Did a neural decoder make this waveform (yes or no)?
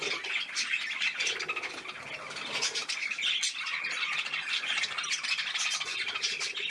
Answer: no